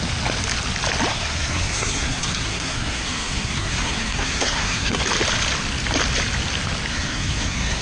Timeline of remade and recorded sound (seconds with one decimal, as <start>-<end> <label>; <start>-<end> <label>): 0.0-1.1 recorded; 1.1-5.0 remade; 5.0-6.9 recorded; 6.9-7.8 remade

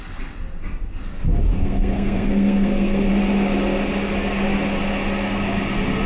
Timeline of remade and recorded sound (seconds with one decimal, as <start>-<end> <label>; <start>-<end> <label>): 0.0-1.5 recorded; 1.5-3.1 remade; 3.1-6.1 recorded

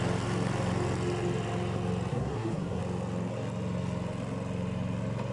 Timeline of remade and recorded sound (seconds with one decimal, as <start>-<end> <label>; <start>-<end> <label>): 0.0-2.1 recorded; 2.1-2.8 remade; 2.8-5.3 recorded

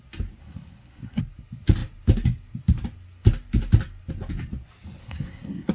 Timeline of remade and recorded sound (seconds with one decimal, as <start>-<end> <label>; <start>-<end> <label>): 0.0-0.4 recorded; 0.4-1.2 remade; 1.2-5.0 recorded; 5.0-5.7 remade

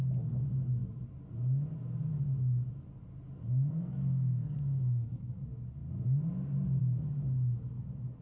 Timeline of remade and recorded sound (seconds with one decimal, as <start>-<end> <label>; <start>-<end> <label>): 0.0-3.4 recorded; 3.4-5.3 remade; 5.3-8.2 recorded

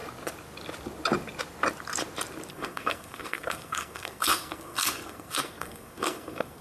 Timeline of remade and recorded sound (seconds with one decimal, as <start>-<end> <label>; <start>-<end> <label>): 0.0-2.5 recorded; 2.5-6.6 remade